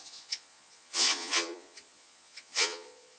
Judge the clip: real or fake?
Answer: fake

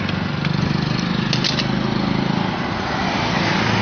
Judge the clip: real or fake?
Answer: real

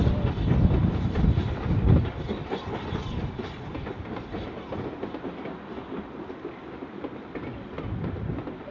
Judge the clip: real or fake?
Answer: real